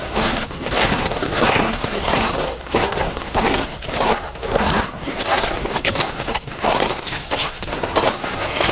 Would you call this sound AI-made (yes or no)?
yes